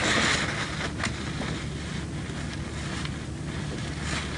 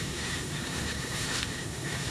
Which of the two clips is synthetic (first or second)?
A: second